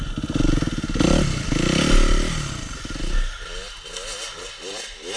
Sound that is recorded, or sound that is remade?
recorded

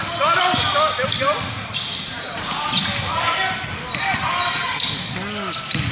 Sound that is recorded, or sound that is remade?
recorded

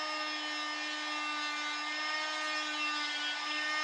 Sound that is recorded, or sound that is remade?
recorded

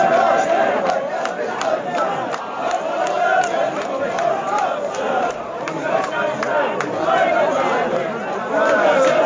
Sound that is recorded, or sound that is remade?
remade